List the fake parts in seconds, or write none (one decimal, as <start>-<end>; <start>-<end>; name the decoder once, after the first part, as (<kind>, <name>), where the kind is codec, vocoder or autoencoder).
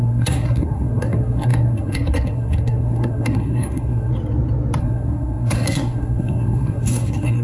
0.0-4.1 (codec, SNAC); 4.8-7.4